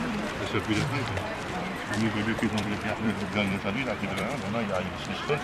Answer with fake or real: fake